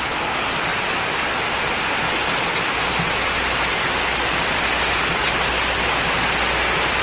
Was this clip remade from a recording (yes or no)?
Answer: no